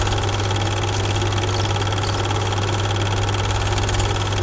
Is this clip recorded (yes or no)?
yes